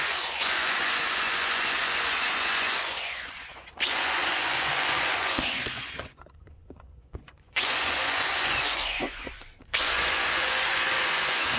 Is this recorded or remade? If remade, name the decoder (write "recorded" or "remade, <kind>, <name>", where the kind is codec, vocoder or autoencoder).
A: remade, vocoder, Vocos